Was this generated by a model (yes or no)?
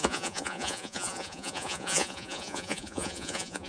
yes